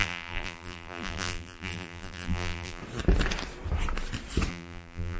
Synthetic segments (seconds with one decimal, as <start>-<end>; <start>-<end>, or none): 0.0-2.8; 4.5-5.2